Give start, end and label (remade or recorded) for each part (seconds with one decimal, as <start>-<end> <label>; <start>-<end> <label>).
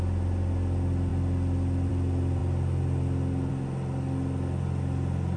0.0-5.4 recorded